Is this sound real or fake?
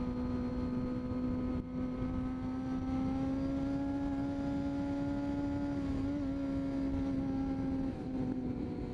real